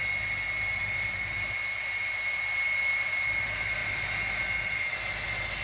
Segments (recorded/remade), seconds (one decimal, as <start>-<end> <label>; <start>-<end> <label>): 0.0-5.6 recorded